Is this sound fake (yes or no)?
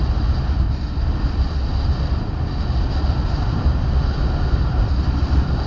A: no